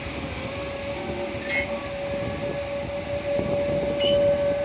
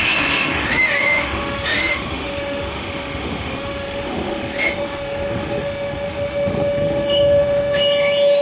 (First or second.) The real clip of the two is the first